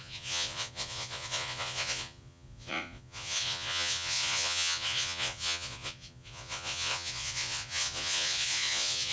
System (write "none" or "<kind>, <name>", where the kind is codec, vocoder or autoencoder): vocoder, Vocos